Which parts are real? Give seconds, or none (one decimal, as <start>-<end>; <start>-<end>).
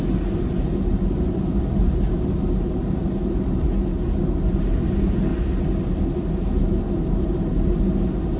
0.0-8.4